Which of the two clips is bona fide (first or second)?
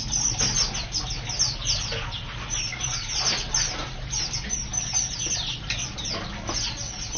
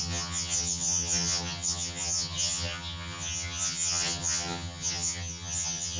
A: first